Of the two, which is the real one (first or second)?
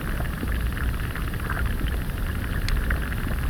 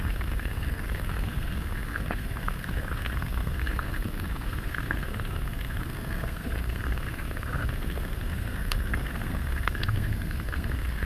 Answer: first